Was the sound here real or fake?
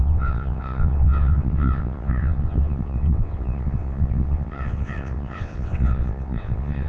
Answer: fake